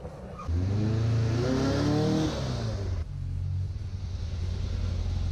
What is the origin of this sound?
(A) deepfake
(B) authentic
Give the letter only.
B